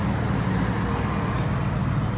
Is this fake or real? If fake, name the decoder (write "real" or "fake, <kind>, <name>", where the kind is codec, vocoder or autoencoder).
real